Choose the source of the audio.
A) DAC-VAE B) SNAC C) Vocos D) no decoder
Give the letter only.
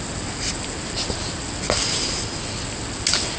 D